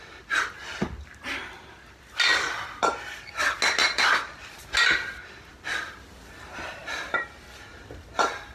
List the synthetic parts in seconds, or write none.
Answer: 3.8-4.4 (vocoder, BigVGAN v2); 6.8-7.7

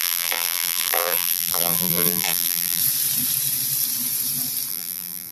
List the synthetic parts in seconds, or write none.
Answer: 0.0-2.8 (vocoder, BigVGAN v2); 4.7-5.3